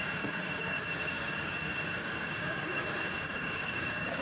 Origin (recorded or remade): remade